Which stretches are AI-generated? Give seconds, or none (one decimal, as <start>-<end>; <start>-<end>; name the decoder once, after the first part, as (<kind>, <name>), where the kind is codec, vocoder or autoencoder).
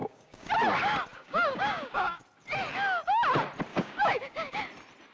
0.0-0.5 (codec, DAC); 1.1-2.2; 3.7-4.6